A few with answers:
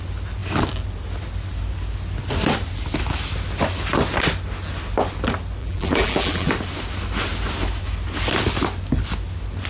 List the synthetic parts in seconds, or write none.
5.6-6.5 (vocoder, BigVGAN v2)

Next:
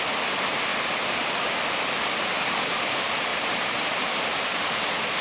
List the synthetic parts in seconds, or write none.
3.3-4.6 (vocoder, BigVGAN v2)